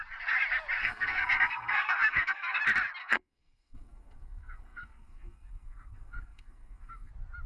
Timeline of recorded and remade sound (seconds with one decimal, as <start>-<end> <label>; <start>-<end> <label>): 0.0-0.8 recorded; 0.8-2.6 remade; 2.6-3.0 recorded; 3.0-7.1 remade; 7.1-7.5 recorded